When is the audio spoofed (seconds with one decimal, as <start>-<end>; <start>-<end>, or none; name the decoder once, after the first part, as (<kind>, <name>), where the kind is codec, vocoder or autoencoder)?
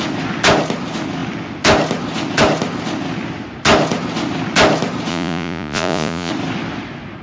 5.1-6.3 (vocoder, Vocos)